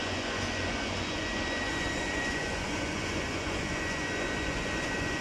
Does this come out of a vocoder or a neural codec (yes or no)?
yes